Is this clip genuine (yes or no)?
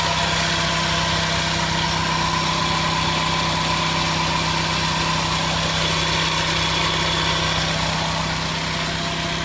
yes